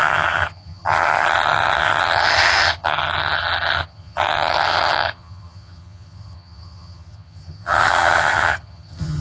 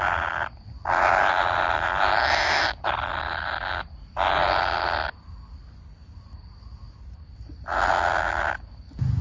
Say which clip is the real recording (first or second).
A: second